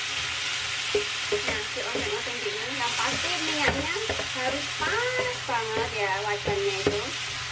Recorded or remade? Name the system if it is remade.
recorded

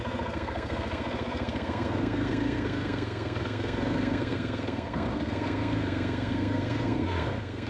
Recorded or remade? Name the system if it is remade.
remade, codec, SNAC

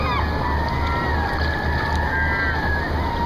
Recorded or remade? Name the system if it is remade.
recorded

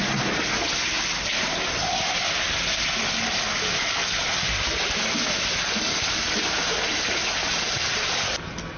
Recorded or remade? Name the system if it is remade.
recorded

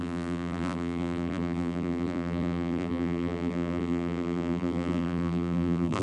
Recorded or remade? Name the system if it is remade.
remade, vocoder, BigVGAN v2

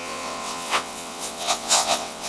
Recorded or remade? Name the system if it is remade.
remade, vocoder, WaveNeXt